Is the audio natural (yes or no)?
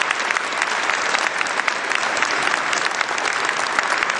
yes